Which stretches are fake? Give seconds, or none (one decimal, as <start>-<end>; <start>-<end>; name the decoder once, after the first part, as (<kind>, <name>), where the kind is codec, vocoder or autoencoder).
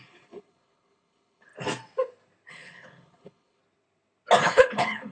0.0-1.5 (codec, HILCodec); 2.5-3.6; 4.4-5.1